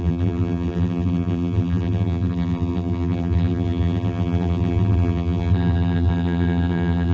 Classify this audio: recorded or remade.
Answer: remade